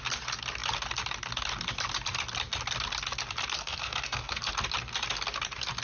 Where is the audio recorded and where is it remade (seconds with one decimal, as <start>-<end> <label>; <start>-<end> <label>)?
0.0-3.6 recorded; 3.6-4.5 remade; 4.5-5.8 recorded